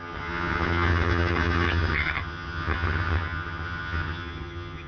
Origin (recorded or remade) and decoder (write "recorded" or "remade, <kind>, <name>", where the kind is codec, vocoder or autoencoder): remade, vocoder, HiFi-GAN